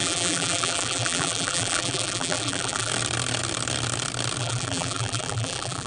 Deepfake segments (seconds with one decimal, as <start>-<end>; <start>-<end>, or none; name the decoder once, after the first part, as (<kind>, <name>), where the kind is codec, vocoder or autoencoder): 0.0-2.9 (vocoder, BigVGAN v2); 4.4-5.9

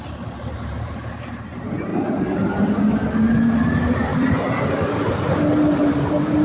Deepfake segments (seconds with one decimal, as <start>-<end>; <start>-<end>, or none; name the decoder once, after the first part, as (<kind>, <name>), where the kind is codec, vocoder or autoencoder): 0.0-1.9 (vocoder, BigVGAN v2); 2.8-6.4